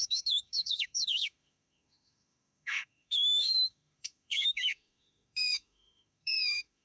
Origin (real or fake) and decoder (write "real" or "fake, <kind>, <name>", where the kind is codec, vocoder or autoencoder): fake, autoencoder, DAC-VAE